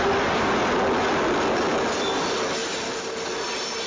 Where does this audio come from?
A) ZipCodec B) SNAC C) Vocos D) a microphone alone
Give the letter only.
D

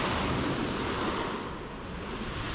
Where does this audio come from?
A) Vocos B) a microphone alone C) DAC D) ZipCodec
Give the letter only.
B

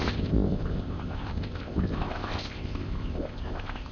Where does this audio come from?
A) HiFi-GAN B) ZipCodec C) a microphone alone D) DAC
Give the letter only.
B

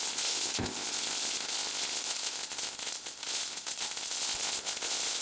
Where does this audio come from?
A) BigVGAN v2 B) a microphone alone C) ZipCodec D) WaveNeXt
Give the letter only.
C